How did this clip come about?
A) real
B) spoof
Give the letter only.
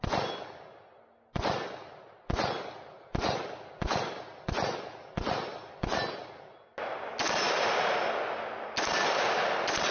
A